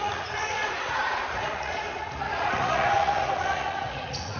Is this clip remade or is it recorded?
remade